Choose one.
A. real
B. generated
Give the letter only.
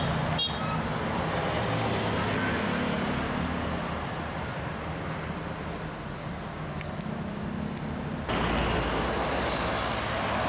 A